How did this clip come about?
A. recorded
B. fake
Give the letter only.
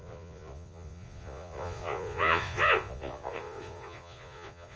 B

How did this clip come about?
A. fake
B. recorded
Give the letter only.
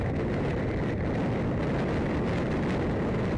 B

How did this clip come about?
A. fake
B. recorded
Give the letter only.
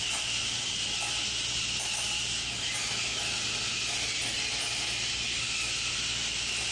B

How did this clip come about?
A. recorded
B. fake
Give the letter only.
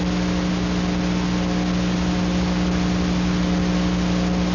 A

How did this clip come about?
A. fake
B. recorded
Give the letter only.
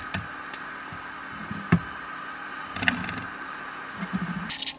B